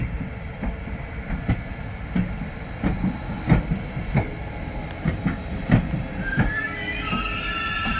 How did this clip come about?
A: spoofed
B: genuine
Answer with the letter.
B